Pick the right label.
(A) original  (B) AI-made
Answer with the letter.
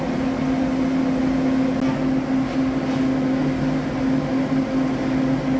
A